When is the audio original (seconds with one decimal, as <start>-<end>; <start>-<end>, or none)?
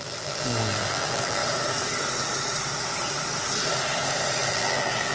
1.4-4.5